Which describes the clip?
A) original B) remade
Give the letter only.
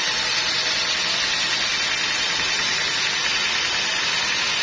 A